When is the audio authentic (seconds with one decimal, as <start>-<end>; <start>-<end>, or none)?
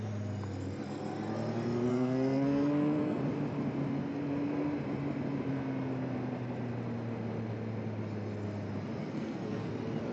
0.0-1.9; 3.2-9.0; 9.7-10.1